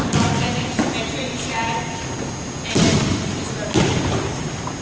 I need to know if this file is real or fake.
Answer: real